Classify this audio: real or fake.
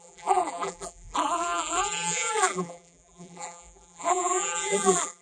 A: fake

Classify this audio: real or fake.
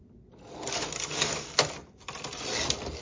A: real